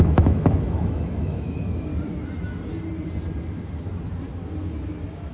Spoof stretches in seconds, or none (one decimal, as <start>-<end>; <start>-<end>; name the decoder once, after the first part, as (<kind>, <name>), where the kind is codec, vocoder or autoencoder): 0.0-1.9 (autoencoder, DAC-VAE)